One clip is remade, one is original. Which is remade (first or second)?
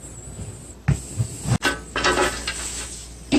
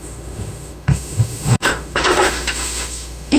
second